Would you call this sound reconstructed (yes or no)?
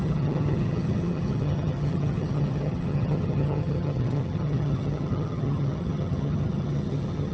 yes